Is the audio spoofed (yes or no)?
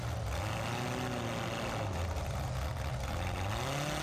no